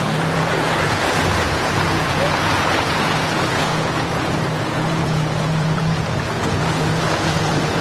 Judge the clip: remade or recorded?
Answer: remade